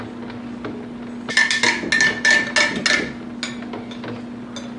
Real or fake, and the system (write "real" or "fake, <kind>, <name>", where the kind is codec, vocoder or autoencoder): real